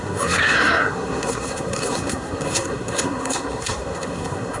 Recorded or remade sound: remade